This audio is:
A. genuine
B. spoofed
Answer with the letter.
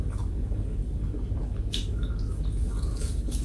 B